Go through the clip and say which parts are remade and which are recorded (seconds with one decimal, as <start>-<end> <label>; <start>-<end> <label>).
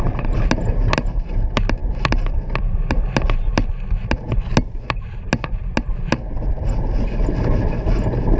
0.0-8.4 recorded